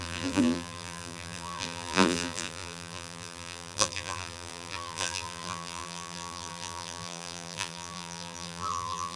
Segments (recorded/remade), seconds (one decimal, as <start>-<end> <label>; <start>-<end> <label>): 0.0-9.2 remade

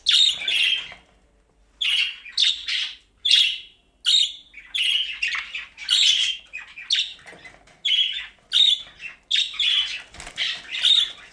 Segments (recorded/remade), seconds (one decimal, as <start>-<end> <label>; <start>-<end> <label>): 0.0-2.4 recorded; 2.4-3.8 remade; 3.8-5.8 recorded; 5.8-6.4 remade; 6.4-11.3 recorded

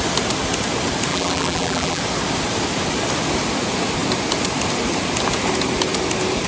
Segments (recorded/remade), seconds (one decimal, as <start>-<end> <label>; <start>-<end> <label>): 0.0-1.1 recorded; 1.1-2.0 remade; 2.0-6.5 recorded

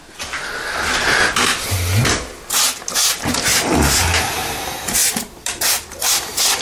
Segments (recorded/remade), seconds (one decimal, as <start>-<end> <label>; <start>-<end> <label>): 0.0-6.6 recorded

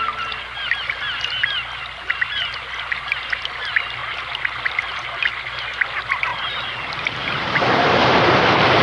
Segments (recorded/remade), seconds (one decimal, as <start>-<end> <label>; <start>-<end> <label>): 0.0-4.0 recorded; 4.0-5.2 remade; 5.2-6.3 recorded; 6.3-8.4 remade; 8.4-8.8 recorded

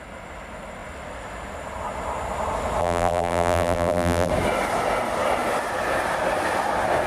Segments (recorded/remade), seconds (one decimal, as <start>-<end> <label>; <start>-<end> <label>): 0.0-2.8 recorded; 2.8-4.3 remade; 4.3-7.1 recorded

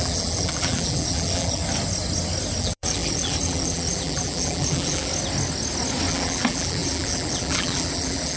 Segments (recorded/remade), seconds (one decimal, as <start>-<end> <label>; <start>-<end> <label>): 0.0-1.6 remade; 1.6-2.6 recorded; 2.6-5.1 remade; 5.1-6.1 recorded; 6.1-8.4 remade